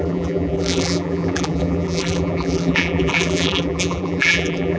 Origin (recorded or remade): remade